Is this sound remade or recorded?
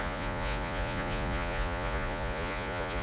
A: remade